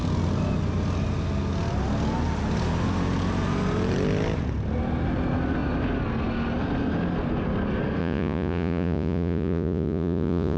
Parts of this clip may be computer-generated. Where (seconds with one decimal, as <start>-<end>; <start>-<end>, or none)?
8.0-10.6